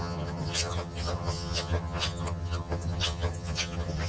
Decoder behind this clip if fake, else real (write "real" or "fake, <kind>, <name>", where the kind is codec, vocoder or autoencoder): fake, vocoder, HiFi-GAN